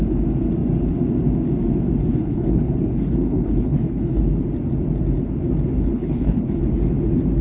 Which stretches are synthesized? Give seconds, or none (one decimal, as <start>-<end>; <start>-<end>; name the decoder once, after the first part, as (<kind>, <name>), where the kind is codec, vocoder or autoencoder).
2.0-4.2 (codec, HILCodec); 5.9-6.6

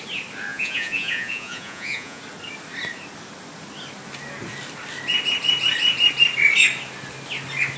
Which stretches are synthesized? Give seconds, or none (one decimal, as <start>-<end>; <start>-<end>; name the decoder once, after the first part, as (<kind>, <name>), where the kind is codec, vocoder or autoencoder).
0.5-2.2 (vocoder, Vocos)

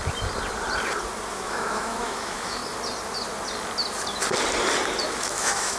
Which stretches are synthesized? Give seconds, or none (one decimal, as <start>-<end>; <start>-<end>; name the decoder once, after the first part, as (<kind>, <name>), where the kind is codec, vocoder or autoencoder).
1.3-2.6 (autoencoder, DAC-VAE); 5.1-5.8

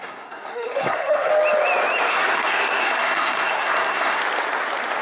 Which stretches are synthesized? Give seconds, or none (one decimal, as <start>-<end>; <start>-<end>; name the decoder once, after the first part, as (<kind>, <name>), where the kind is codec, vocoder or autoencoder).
0.0-1.3 (codec, SNAC); 2.1-4.2

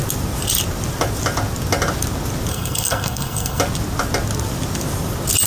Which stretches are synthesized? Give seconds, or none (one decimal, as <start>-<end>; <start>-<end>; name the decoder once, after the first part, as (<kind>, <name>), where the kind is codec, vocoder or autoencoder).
2.5-3.6 (codec, SNAC)

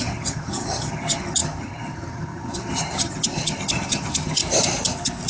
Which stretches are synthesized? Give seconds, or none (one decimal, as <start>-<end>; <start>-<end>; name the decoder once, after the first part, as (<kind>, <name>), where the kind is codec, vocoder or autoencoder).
0.0-4.4 (vocoder, HiFi-GAN)